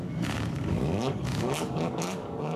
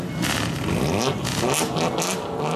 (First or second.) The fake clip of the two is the first